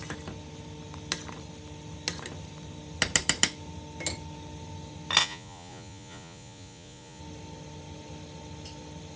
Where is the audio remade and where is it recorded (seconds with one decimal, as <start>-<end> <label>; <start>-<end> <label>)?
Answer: 0.0-5.2 recorded; 5.2-7.2 remade; 7.2-9.2 recorded